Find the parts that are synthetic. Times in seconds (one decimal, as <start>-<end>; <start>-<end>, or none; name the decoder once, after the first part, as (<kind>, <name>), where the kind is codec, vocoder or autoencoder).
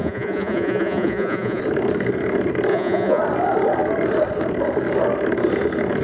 0.0-1.6 (vocoder, Vocos); 2.7-3.2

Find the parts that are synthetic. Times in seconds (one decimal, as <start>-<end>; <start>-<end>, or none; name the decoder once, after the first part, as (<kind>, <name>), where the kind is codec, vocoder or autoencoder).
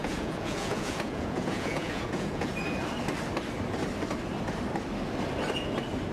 0.0-2.5 (vocoder, Vocos)